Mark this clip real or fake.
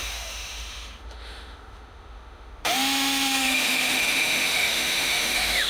fake